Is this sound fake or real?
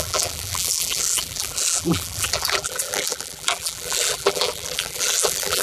fake